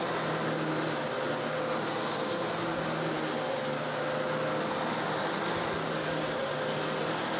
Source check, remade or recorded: recorded